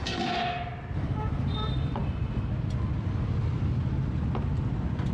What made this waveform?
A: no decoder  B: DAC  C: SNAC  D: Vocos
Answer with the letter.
A